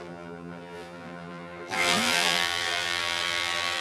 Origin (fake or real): fake